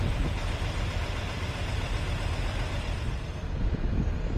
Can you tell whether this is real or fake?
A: real